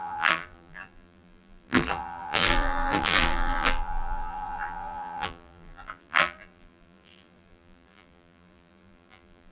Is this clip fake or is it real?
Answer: fake